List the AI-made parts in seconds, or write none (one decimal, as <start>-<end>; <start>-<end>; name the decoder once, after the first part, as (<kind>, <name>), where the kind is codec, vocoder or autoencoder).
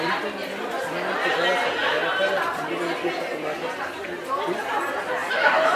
1.8-2.7 (vocoder, BigVGAN v2)